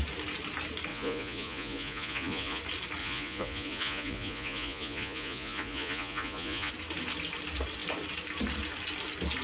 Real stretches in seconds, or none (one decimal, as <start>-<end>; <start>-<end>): 0.0-0.9; 2.6-3.0; 6.7-9.4